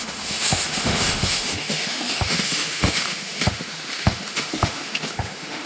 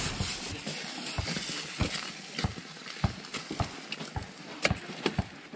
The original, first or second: second